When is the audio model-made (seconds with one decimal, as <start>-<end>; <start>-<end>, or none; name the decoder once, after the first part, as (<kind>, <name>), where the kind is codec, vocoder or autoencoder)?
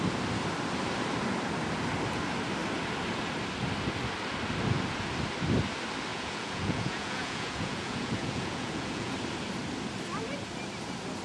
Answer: 6.1-9.1 (vocoder, Vocos)